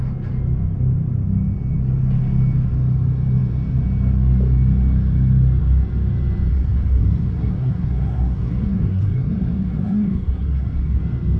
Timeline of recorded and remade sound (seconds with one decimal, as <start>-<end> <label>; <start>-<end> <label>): 0.0-6.5 recorded; 6.5-11.0 remade; 11.0-11.4 recorded